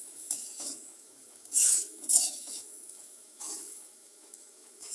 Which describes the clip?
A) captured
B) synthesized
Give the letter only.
B